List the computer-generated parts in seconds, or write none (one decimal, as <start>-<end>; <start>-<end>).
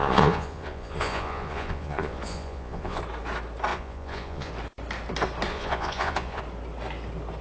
0.0-3.0; 3.7-4.5; 5.5-6.4